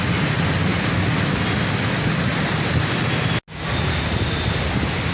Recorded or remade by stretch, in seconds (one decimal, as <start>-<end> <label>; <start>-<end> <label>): 0.0-5.1 recorded